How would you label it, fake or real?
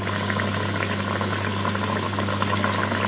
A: real